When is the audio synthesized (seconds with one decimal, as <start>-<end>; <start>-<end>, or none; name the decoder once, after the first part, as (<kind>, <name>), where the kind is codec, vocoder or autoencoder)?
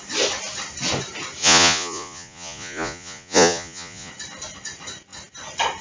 1.4-4.1 (vocoder, Vocos)